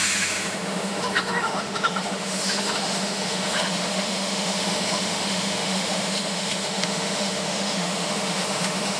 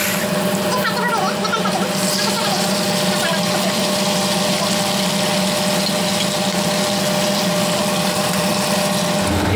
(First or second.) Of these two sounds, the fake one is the first